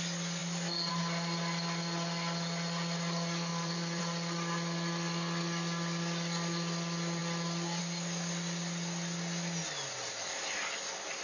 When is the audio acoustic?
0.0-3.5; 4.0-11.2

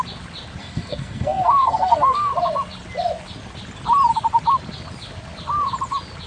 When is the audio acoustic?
0.0-0.6; 2.3-6.3

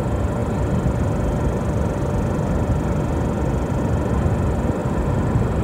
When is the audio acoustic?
0.0-4.8

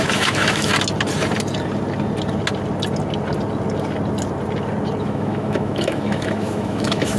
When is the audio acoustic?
0.7-5.0

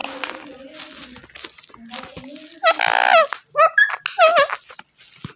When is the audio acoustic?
0.0-5.4

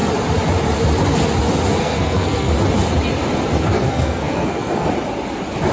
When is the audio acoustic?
0.0-1.8; 2.5-3.7; 4.9-5.7

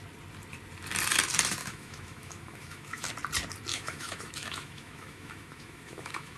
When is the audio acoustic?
0.0-1.6; 3.1-3.7